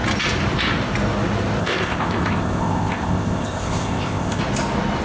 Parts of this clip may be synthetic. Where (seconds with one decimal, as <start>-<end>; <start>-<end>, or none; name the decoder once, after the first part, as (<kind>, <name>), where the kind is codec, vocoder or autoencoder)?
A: 1.6-4.4 (codec, ZipCodec)